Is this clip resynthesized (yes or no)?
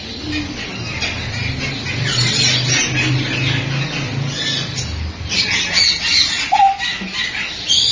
no